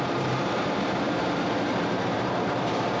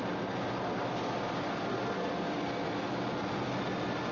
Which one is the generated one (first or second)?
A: first